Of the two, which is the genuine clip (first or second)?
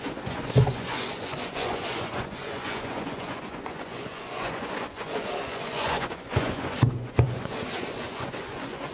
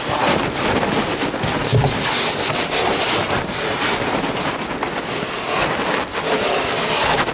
second